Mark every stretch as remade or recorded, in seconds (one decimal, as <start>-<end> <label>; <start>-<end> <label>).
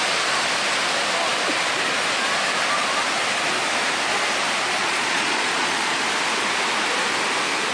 0.0-4.8 recorded; 4.8-6.0 remade; 6.0-7.7 recorded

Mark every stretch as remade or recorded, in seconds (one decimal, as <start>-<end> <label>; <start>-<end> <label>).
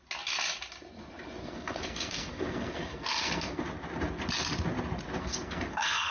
0.0-1.4 recorded; 1.4-3.6 remade; 3.6-5.2 recorded; 5.2-6.1 remade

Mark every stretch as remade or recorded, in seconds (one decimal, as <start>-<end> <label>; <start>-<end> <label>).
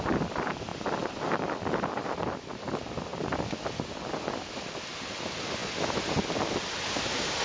0.0-0.7 remade; 0.7-1.3 recorded; 1.3-5.6 remade; 5.6-6.6 recorded; 6.6-7.4 remade